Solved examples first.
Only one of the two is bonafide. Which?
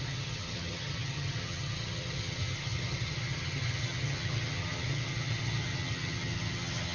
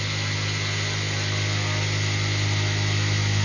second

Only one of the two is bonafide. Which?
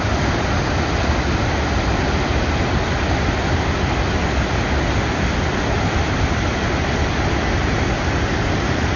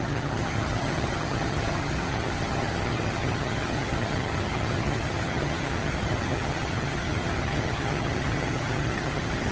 first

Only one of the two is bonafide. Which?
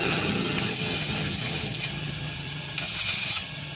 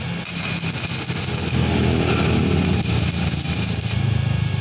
second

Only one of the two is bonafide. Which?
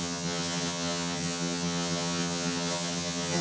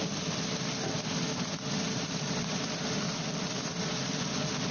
second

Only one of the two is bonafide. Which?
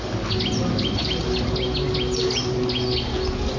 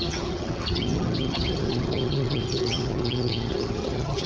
first